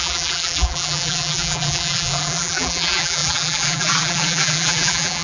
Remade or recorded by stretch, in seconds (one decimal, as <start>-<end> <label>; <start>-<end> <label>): 0.0-5.2 remade